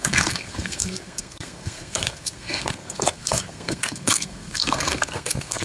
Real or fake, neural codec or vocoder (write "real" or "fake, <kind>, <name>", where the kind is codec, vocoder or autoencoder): fake, codec, SNAC